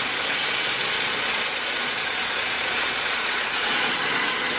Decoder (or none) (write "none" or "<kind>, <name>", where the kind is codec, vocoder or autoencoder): vocoder, Vocos